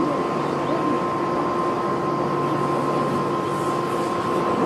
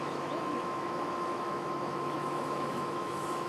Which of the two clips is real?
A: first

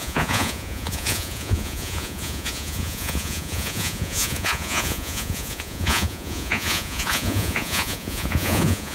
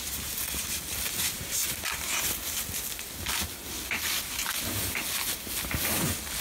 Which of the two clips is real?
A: second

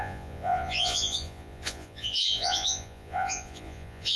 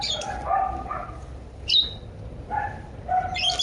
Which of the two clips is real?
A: second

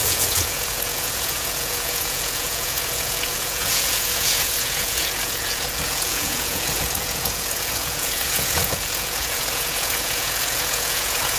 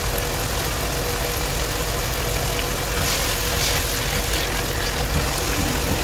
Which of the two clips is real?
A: second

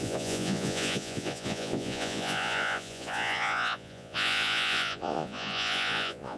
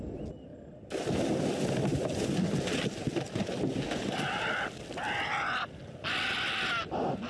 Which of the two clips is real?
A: second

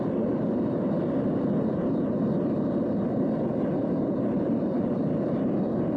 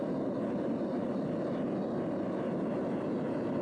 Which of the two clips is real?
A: second